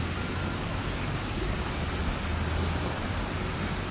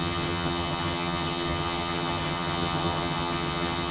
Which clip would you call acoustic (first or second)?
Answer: first